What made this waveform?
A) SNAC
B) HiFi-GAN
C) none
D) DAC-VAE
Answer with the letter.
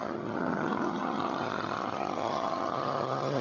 B